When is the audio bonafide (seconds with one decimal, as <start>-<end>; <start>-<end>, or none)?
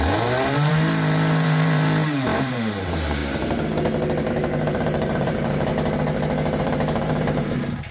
3.2-4.3; 5.7-6.6